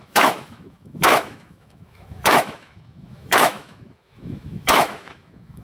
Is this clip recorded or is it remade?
remade